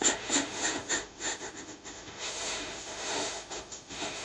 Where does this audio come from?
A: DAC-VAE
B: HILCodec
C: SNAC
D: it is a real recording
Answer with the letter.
A